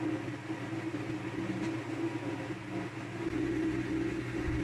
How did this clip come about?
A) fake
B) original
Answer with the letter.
B